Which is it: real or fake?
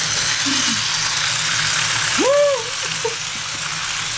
real